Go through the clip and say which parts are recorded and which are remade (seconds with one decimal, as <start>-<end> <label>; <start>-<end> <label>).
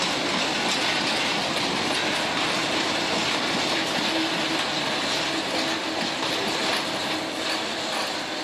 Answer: 0.0-2.6 recorded; 2.6-4.1 remade; 4.1-8.4 recorded